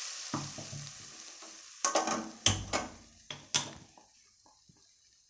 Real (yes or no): yes